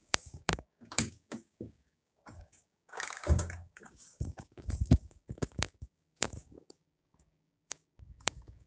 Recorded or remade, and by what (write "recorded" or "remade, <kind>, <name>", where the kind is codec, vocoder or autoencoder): remade, codec, DAC